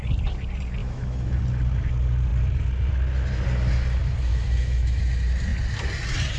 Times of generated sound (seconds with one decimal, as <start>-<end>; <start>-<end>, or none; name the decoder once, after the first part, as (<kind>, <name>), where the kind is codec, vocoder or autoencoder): 0.8-1.4 (autoencoder, DAC-VAE); 4.3-5.0